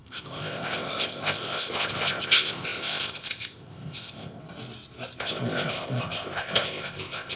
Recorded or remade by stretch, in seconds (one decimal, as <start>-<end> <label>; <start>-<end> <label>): 0.0-4.4 remade; 4.4-5.2 recorded; 5.2-7.4 remade